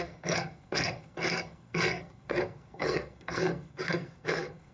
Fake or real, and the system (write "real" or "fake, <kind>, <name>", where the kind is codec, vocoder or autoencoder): fake, codec, SNAC